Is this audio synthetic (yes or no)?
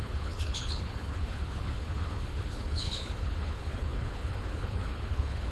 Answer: yes